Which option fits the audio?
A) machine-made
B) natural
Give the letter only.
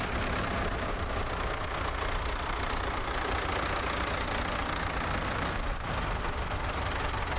B